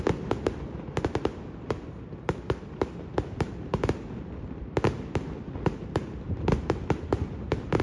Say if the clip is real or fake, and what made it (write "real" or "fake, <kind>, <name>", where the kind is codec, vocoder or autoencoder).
real